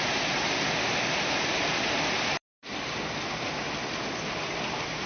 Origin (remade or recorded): recorded